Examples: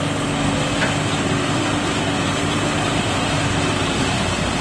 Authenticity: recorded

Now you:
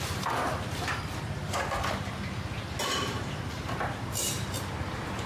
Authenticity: recorded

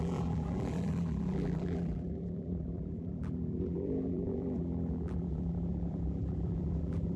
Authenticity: remade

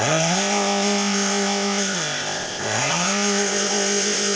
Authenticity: remade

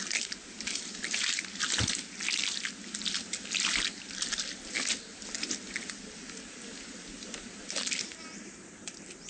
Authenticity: recorded